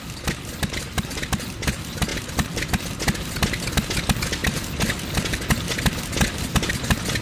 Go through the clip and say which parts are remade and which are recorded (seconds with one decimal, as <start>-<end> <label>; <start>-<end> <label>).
0.0-4.4 recorded; 4.4-5.2 remade; 5.2-7.2 recorded

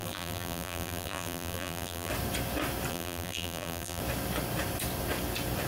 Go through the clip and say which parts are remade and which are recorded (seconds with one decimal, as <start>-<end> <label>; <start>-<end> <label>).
0.0-2.1 remade; 2.1-2.9 recorded; 2.9-4.0 remade; 4.0-5.7 recorded

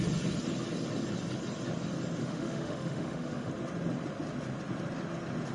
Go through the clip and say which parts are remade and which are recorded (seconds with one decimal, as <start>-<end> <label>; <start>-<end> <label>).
0.0-2.2 recorded; 2.2-3.5 remade; 3.5-5.5 recorded

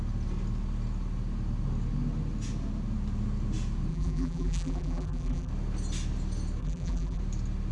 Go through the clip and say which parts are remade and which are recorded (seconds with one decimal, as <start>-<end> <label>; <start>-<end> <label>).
0.0-3.9 recorded; 3.9-5.5 remade; 5.5-6.6 recorded; 6.6-7.2 remade; 7.2-7.7 recorded

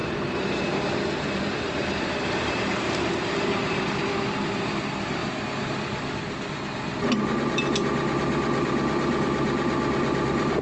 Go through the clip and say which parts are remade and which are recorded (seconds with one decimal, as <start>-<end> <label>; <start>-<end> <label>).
0.0-4.8 remade; 4.8-10.6 recorded

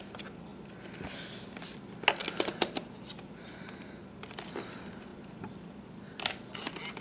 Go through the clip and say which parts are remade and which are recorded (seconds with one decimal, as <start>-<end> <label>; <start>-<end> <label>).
0.0-7.0 recorded

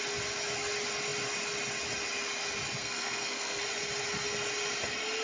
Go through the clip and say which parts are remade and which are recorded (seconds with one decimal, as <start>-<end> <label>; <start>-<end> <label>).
0.0-2.8 recorded; 2.8-3.6 remade; 3.6-5.2 recorded

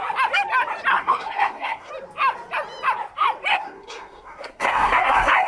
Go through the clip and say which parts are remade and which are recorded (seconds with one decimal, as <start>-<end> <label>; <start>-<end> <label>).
0.0-0.9 recorded; 0.9-1.9 remade; 1.9-3.5 recorded; 3.5-5.5 remade